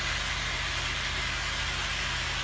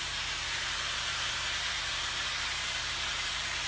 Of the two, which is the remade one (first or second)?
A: second